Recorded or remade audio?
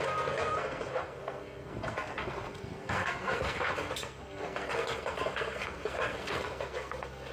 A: remade